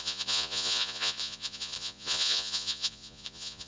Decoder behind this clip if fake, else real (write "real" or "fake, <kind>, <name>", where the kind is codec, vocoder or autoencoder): fake, vocoder, Vocos